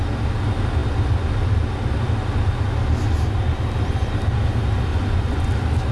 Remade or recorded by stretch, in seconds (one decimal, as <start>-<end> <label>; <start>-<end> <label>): 0.0-4.9 recorded; 4.9-5.5 remade; 5.5-5.9 recorded